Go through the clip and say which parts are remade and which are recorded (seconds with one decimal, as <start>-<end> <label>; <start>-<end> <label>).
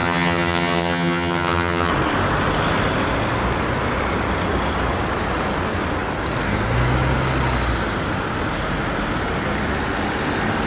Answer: 0.0-1.9 remade; 1.9-10.7 recorded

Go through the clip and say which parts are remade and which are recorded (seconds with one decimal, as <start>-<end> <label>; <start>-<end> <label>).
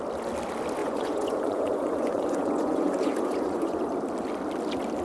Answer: 0.0-0.8 recorded; 0.8-3.8 remade; 3.8-5.0 recorded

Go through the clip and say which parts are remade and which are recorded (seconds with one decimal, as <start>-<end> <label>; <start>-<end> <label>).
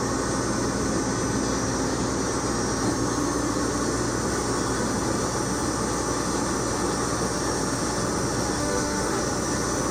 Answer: 0.0-8.6 recorded; 8.6-9.2 remade; 9.2-9.9 recorded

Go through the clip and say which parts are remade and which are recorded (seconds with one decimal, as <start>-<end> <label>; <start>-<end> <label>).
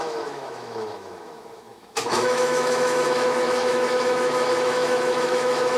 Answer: 0.0-5.8 remade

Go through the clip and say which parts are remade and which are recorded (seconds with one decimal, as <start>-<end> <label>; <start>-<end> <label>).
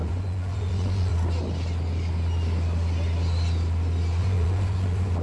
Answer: 0.0-1.1 remade; 1.1-4.2 recorded; 4.2-5.2 remade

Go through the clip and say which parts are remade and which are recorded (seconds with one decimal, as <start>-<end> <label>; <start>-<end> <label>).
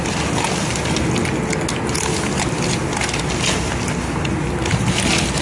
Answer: 0.0-5.4 recorded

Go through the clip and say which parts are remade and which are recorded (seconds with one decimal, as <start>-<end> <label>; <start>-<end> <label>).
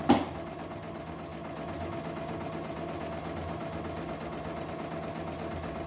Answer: 0.0-5.9 recorded